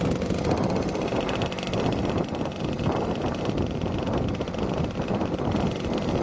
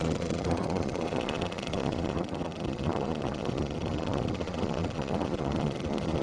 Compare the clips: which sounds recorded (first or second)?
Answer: first